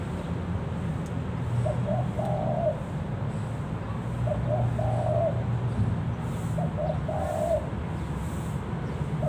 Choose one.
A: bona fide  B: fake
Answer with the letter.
A